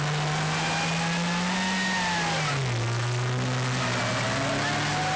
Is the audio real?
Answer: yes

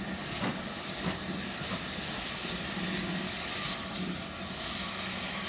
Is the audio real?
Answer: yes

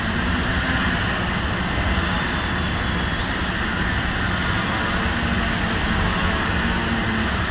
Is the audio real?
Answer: yes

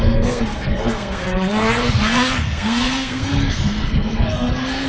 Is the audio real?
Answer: no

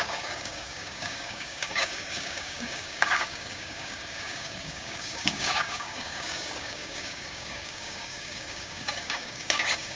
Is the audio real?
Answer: no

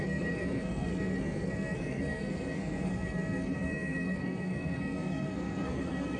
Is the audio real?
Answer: no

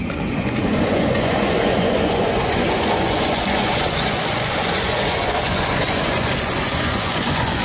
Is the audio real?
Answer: no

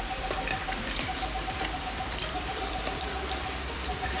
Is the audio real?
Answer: no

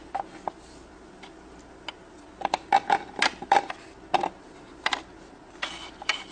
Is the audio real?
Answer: yes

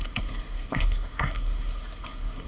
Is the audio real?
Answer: no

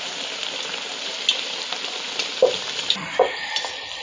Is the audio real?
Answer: yes